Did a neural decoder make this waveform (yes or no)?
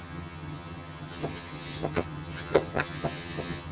yes